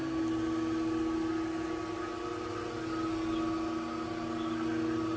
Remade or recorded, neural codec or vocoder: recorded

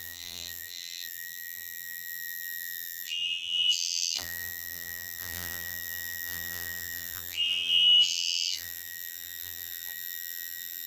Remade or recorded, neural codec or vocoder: remade, vocoder, BigVGAN v2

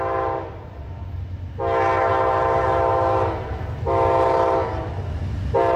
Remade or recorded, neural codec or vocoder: recorded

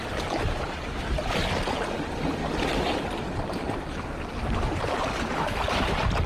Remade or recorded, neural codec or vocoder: recorded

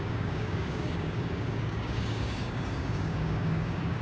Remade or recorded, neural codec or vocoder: remade, codec, DAC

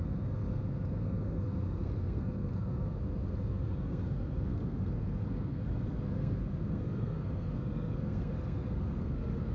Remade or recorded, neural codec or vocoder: remade, codec, SNAC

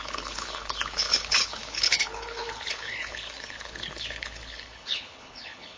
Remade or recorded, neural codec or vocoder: remade, codec, HILCodec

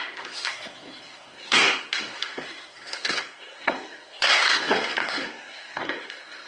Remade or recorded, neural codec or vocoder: remade, codec, SNAC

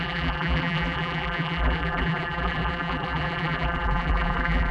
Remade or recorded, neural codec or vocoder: remade, vocoder, BigVGAN v2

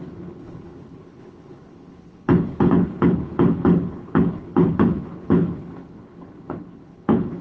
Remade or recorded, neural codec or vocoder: remade, codec, HILCodec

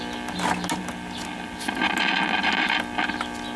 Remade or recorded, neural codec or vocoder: recorded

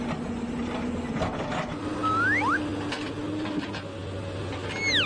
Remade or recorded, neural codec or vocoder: recorded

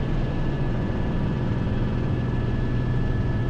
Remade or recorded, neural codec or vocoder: remade, vocoder, Vocos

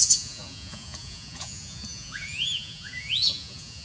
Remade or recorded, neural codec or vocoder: remade, vocoder, Vocos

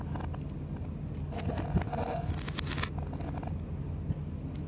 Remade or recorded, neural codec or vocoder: recorded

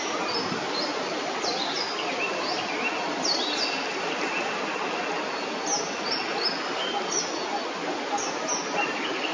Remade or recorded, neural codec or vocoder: recorded